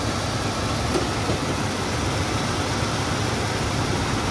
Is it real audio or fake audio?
real